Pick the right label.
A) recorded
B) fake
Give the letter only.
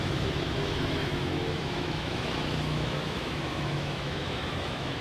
B